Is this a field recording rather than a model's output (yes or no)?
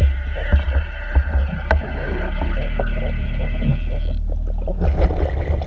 yes